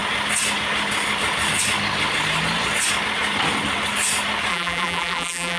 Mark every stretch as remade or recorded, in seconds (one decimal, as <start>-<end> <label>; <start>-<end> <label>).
0.0-4.5 recorded; 4.5-5.6 remade